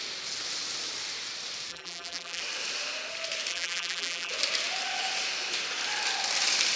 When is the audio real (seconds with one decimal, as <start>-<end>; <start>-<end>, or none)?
0.0-1.7; 2.4-3.5; 4.3-6.8